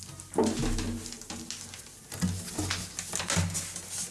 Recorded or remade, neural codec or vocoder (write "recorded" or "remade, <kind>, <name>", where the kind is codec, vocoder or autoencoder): recorded